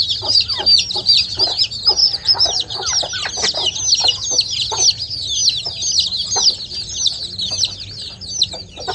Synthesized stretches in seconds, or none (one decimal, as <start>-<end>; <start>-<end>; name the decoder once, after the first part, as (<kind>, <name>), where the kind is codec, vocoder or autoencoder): 2.0-2.9 (vocoder, BigVGAN v2)